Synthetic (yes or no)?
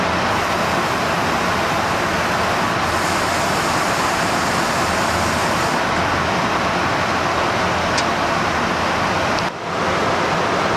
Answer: no